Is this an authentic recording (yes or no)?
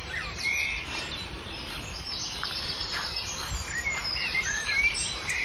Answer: no